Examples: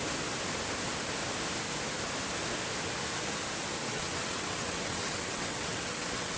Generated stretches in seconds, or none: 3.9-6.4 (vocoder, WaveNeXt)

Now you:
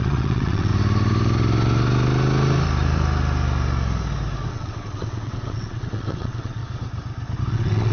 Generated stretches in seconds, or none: 0.0-0.7 (vocoder, WaveNeXt); 4.5-6.6; 7.5-7.9

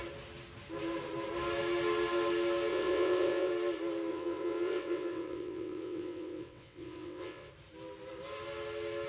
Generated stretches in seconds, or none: 2.7-3.5 (vocoder, WaveNeXt); 4.1-7.5

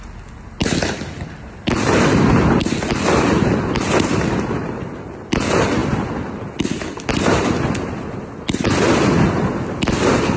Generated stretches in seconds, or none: none

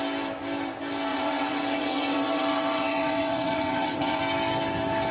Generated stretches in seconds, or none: 1.1-4.2 (vocoder, WaveNeXt)

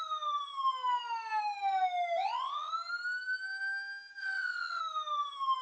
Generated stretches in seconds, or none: 2.2-2.7 (vocoder, WaveNeXt); 4.2-4.8

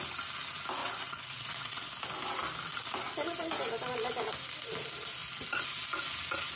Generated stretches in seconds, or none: 0.8-1.9 (vocoder, WaveNeXt)